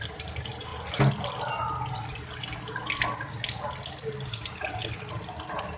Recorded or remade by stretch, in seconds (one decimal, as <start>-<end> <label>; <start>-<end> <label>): 0.0-5.8 recorded